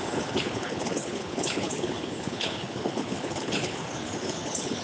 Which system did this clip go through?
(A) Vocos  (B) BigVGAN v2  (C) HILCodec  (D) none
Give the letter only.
C